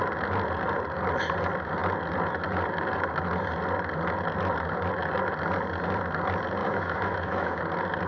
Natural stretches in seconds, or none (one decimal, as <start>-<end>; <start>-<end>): 0.0-6.6; 7.6-8.1